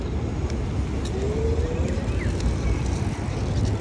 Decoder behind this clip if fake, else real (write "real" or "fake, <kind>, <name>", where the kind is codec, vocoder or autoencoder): real